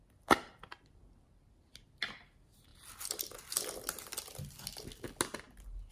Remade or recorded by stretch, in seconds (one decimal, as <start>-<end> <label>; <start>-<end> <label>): 0.0-5.9 recorded